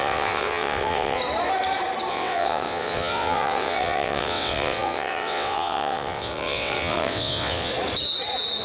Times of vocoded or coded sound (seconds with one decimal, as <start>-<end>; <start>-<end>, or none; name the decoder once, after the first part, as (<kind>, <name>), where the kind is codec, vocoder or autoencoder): 0.0-1.2 (vocoder, WaveNeXt); 2.1-7.7